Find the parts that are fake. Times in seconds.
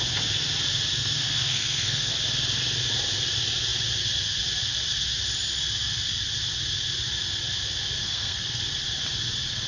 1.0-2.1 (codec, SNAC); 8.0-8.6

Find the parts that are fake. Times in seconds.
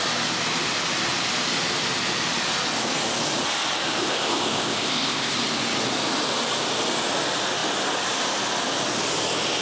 4.0-5.3 (codec, ZipCodec)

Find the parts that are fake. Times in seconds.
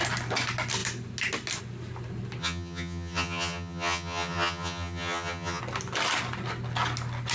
2.4-5.6 (vocoder, HiFi-GAN)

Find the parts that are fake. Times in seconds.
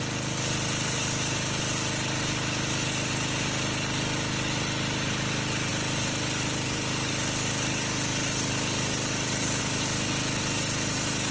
none